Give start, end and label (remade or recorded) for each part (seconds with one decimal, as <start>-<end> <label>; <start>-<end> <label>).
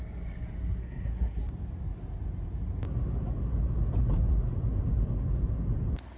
0.0-0.8 recorded; 0.8-1.4 remade; 1.4-6.2 recorded